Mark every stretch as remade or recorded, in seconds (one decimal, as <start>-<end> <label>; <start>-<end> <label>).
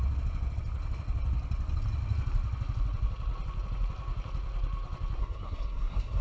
0.0-5.2 recorded; 5.2-6.2 remade